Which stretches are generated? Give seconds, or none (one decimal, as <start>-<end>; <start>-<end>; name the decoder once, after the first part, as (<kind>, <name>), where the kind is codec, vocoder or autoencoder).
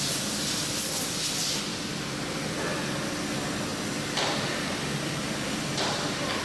1.7-2.3 (vocoder, BigVGAN v2); 3.7-6.4